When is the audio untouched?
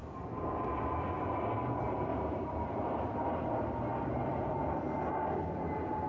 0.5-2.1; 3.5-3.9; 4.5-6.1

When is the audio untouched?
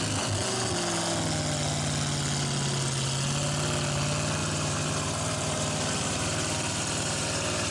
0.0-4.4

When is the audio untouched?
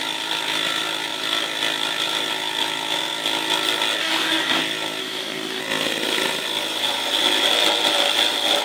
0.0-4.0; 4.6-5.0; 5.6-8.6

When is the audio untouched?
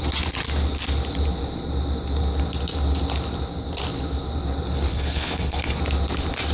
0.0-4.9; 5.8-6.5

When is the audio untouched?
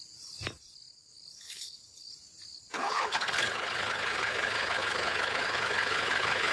0.0-0.9; 2.1-2.5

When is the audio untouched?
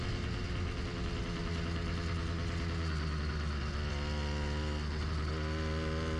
0.0-6.2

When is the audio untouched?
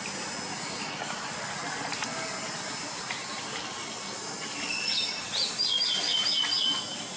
0.0-7.2